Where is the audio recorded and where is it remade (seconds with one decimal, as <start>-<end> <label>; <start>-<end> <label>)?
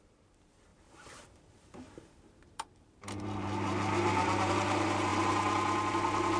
0.0-0.7 recorded; 0.7-4.5 remade; 4.5-6.4 recorded